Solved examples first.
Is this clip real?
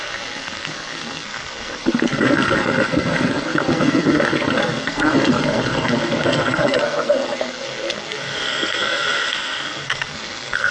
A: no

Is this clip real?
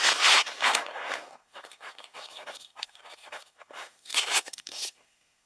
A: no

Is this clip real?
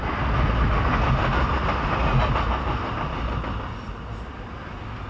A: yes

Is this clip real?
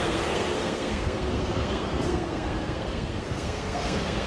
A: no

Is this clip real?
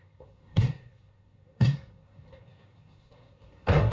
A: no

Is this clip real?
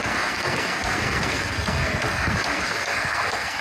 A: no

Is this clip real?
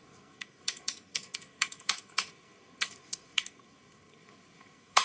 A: no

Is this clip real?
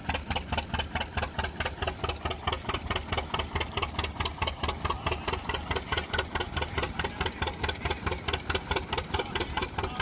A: yes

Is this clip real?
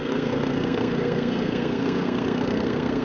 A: no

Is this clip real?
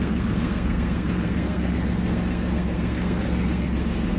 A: no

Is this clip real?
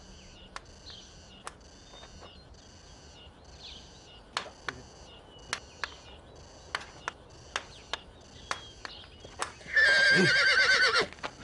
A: yes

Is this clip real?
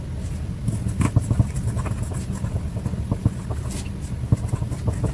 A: yes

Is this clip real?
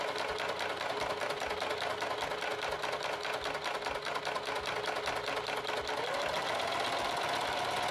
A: yes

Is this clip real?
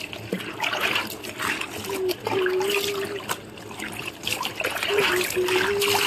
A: yes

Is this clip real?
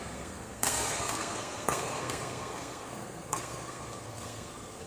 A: no